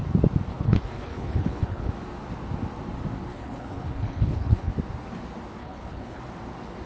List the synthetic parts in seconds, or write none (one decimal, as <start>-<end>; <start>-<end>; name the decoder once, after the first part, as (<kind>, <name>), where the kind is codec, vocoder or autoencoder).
0.5-1.9 (codec, HILCodec); 3.3-4.7; 5.6-6.2